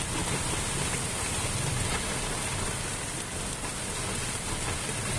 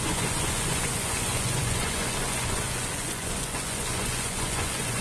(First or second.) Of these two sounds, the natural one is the first